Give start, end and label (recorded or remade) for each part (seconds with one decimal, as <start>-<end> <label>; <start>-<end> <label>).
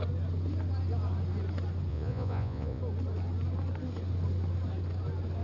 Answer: 0.0-1.9 recorded; 1.9-2.8 remade; 2.8-5.4 recorded